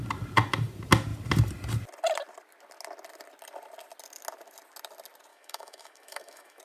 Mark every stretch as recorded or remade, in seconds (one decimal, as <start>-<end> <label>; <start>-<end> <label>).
0.0-5.3 recorded; 5.3-6.6 remade